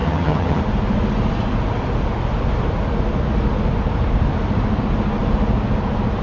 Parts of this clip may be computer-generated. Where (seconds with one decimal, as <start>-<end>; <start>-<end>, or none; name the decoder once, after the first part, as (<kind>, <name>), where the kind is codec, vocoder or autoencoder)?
0.0-0.6 (vocoder, HiFi-GAN)